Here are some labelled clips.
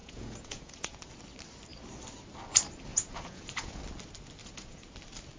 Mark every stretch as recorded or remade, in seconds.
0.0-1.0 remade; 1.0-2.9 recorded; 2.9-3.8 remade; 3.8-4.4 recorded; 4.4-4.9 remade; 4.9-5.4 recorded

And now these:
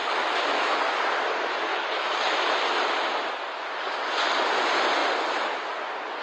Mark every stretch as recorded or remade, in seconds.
0.0-0.9 remade; 0.9-1.7 recorded; 1.7-2.5 remade; 2.5-6.2 recorded

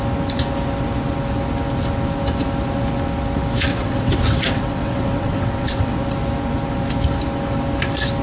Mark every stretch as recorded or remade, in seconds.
0.0-3.7 recorded; 3.7-6.0 remade; 6.0-8.2 recorded

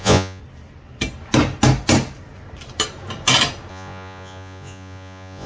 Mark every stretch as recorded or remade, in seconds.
0.0-0.4 remade; 0.4-3.7 recorded; 3.7-5.5 remade

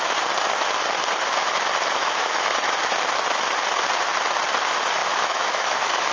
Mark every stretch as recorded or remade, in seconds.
0.0-2.0 recorded; 2.0-2.5 remade; 2.5-5.0 recorded; 5.0-6.1 remade

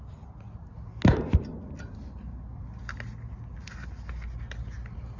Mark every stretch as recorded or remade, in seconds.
0.0-5.2 recorded

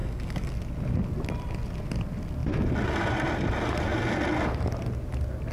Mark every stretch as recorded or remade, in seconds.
0.0-0.5 remade; 0.5-5.5 recorded

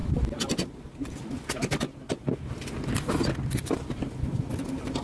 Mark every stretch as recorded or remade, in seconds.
0.0-5.0 recorded